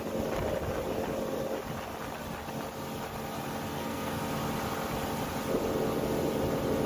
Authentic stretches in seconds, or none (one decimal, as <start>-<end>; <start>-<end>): 0.0-3.7; 4.2-6.9